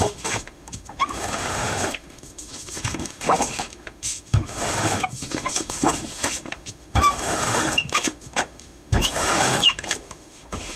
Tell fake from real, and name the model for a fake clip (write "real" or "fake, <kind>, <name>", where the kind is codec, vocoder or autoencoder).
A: fake, autoencoder, DAC-VAE